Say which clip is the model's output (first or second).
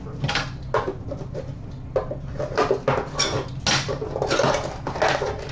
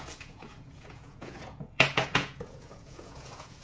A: second